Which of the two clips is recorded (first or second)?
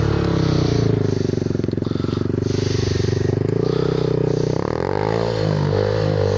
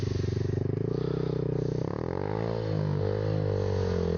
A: second